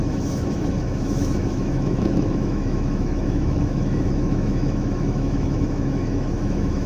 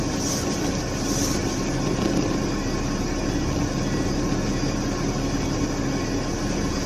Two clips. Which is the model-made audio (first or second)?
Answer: first